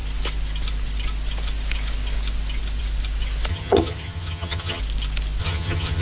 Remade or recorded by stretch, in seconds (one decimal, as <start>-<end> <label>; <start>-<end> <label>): 0.0-3.5 recorded; 3.5-4.8 remade; 4.8-5.4 recorded; 5.4-6.0 remade